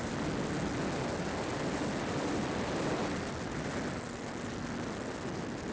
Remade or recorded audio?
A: recorded